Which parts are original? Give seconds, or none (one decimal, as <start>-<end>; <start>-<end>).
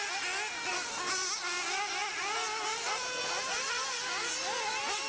0.0-5.1